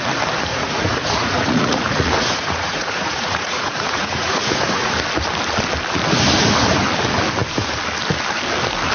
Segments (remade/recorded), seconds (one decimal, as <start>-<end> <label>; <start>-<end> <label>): 0.0-0.5 recorded; 0.5-4.9 remade; 4.9-8.9 recorded